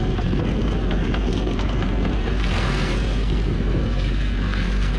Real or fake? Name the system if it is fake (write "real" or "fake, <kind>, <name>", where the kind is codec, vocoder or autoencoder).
fake, codec, SNAC